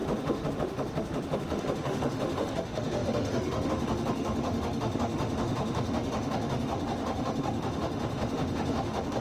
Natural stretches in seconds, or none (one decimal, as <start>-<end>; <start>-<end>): none